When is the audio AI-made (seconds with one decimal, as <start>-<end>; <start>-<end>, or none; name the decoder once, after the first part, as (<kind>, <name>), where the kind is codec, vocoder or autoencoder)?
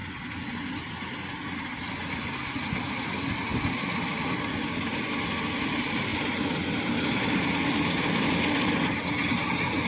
none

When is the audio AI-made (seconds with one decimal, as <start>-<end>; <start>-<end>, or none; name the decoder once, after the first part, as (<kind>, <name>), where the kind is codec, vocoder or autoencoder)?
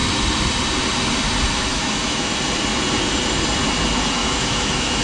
1.7-2.3 (autoencoder, DAC-VAE); 4.2-5.0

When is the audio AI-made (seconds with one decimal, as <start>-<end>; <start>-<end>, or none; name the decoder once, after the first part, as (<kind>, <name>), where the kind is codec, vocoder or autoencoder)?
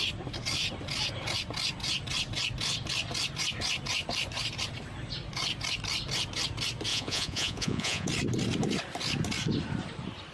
6.9-8.1 (vocoder, Vocos)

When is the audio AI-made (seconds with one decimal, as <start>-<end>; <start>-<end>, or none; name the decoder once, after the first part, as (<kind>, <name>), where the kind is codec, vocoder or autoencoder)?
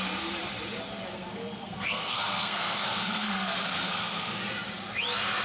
1.1-4.3 (codec, SNAC)